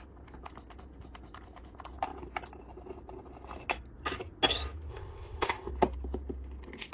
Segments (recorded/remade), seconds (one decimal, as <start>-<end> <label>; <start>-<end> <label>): 0.0-4.9 recorded; 4.9-5.7 remade; 5.7-6.9 recorded